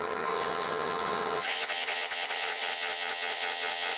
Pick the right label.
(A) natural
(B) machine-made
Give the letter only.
B